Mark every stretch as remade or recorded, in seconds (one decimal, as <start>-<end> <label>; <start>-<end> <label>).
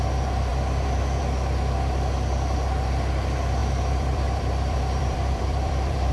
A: 0.0-3.6 recorded; 3.6-6.1 remade